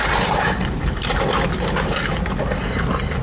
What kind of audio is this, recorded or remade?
recorded